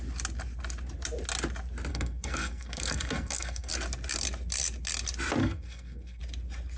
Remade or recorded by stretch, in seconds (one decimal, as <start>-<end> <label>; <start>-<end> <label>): 0.0-1.9 recorded; 1.9-3.7 remade; 3.7-5.4 recorded; 5.4-6.2 remade; 6.2-6.8 recorded